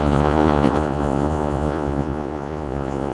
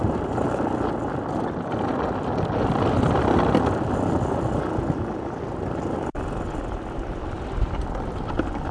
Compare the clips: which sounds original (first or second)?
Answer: second